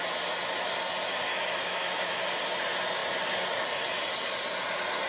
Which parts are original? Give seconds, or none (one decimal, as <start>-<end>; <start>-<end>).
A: 0.0-1.3; 2.2-5.1